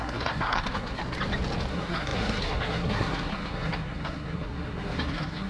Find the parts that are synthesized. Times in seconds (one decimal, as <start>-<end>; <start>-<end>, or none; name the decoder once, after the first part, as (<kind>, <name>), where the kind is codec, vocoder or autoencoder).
0.0-1.0 (codec, SNAC); 1.7-5.5